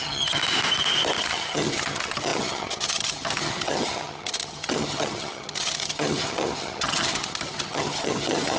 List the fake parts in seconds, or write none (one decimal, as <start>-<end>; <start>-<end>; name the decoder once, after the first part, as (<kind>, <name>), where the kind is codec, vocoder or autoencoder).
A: 0.0-0.4 (vocoder, HiFi-GAN); 1.2-8.6